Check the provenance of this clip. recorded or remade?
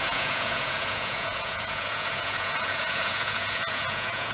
remade